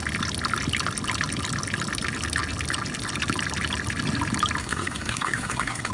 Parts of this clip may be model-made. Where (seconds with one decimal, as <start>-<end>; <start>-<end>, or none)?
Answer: 4.6-5.9